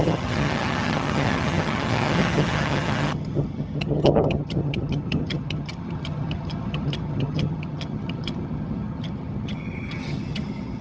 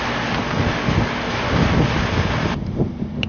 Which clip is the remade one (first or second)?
first